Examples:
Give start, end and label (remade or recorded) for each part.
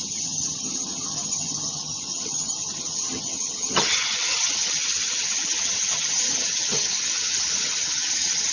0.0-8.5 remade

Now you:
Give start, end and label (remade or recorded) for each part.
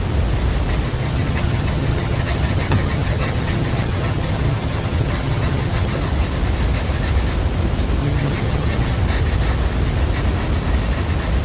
0.0-1.0 recorded; 1.0-6.0 remade; 6.0-8.0 recorded; 8.0-9.0 remade; 9.0-11.4 recorded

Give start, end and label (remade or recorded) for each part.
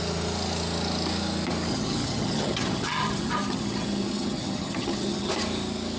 0.0-1.7 recorded; 1.7-5.3 remade; 5.3-6.0 recorded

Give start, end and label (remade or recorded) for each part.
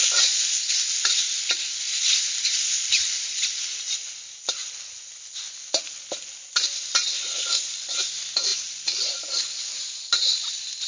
0.0-10.9 recorded